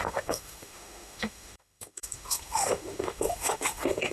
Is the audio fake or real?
fake